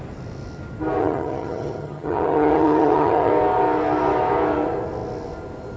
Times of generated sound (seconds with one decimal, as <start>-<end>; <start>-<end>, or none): 1.0-3.3